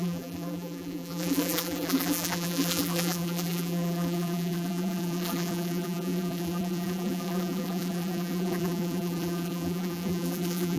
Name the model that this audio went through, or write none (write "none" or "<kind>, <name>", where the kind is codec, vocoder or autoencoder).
vocoder, BigVGAN v2